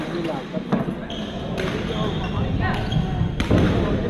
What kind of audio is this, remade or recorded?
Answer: recorded